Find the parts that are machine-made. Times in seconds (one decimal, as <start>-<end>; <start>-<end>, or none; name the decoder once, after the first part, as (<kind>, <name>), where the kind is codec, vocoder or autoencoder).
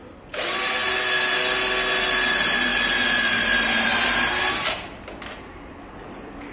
none